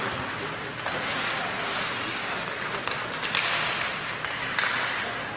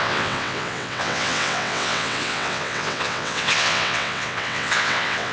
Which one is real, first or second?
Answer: first